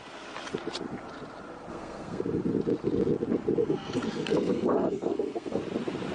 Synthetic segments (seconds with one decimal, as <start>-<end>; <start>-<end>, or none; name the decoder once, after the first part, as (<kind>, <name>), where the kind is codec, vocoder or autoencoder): 1.7-2.2 (codec, SNAC); 3.6-5.6